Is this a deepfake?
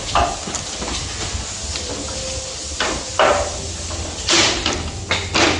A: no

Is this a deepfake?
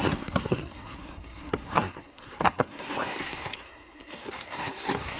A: yes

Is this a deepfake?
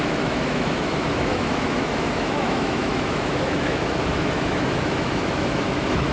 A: yes